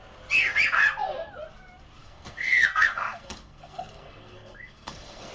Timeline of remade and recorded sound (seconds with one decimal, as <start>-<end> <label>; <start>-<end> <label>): 0.0-2.0 recorded; 2.0-5.3 remade